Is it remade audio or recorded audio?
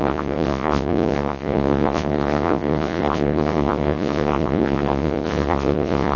remade